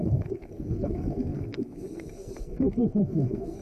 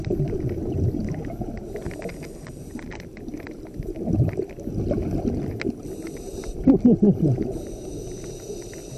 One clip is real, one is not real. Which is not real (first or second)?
first